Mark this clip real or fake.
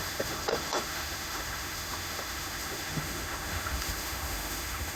fake